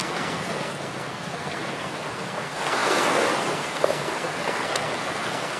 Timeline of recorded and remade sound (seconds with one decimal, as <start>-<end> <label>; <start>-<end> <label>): 0.0-5.6 remade